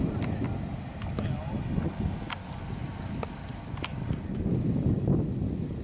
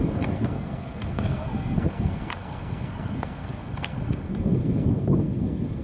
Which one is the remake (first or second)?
second